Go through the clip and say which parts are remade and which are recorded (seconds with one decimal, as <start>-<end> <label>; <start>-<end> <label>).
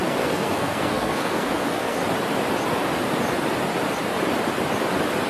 0.0-2.0 remade; 2.0-5.3 recorded